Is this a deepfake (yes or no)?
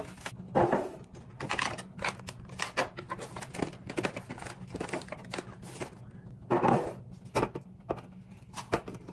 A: no